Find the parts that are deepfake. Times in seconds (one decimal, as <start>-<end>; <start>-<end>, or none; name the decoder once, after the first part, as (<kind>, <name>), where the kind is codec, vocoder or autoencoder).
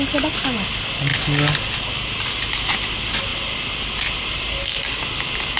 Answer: none